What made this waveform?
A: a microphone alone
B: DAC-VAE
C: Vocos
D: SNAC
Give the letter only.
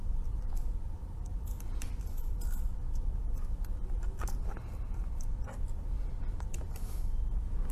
A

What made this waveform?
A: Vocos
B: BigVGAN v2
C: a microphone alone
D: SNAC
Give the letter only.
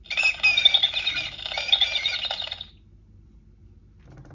C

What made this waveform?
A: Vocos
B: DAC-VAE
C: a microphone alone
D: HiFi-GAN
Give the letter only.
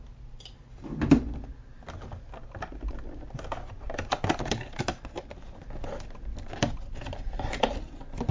C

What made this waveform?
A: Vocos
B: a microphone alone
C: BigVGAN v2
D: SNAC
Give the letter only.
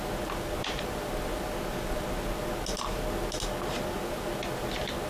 B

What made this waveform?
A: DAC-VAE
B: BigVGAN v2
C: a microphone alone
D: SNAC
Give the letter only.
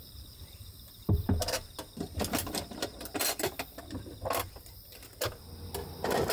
B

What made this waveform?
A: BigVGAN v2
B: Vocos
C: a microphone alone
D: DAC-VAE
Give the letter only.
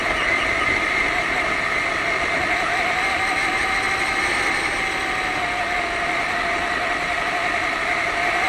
C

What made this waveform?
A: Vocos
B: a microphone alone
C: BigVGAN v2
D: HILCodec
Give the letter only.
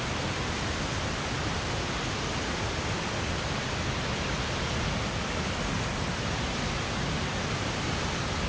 B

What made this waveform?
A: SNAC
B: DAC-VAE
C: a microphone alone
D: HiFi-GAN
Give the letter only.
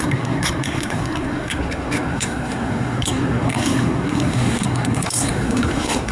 A